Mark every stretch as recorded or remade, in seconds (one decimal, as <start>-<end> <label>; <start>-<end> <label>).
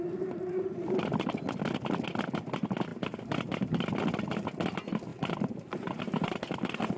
0.0-2.9 recorded; 2.9-3.7 remade; 3.7-5.1 recorded; 5.1-6.0 remade; 6.0-7.0 recorded